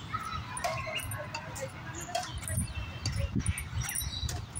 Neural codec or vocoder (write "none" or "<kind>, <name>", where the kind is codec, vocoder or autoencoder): none